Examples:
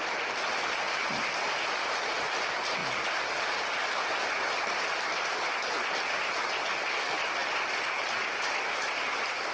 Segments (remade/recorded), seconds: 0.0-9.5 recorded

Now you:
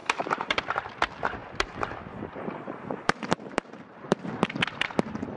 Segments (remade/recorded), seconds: 0.0-0.6 remade; 0.6-1.4 recorded; 1.4-4.3 remade; 4.3-5.4 recorded

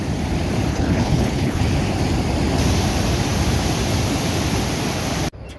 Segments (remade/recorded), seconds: 0.0-0.7 recorded; 0.7-1.6 remade; 1.6-5.6 recorded

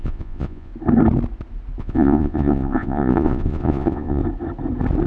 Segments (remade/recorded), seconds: 0.0-0.7 remade; 0.7-1.8 recorded; 1.8-4.2 remade; 4.2-5.1 recorded